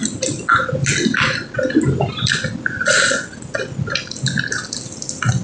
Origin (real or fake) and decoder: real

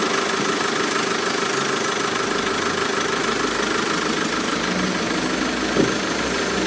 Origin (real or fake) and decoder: real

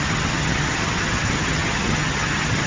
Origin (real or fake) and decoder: fake, vocoder, HiFi-GAN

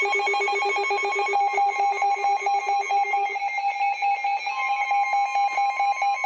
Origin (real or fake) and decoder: real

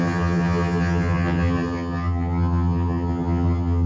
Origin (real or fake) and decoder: fake, vocoder, HiFi-GAN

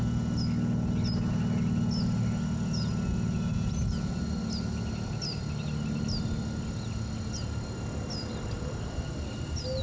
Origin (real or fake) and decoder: real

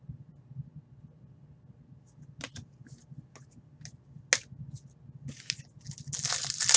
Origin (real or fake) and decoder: real